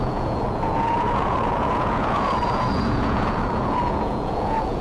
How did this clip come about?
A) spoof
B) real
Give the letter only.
A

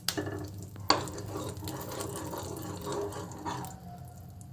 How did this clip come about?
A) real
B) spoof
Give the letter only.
A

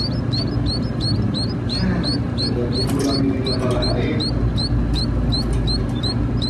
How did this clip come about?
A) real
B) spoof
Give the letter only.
A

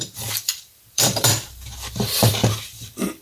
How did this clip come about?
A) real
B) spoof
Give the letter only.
B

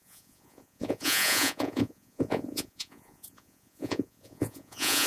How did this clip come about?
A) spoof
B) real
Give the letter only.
A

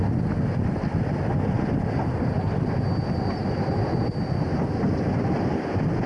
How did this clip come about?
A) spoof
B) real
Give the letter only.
B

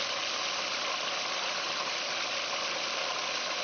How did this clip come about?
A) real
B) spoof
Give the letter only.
B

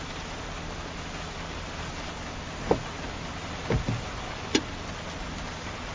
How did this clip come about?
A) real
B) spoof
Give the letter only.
A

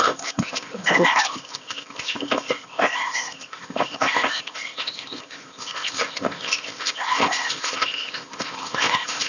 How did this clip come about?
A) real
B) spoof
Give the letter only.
B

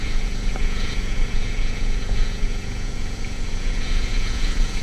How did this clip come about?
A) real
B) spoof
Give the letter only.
B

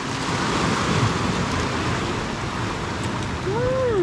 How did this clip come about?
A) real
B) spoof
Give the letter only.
A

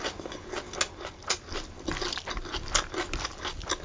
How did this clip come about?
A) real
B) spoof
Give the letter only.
A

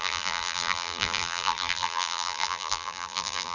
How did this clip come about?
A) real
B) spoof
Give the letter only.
B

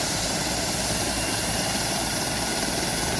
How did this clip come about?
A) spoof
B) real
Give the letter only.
A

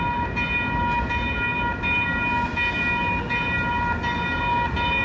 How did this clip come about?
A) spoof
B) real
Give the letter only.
B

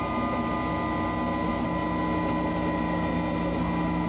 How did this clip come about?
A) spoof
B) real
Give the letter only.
B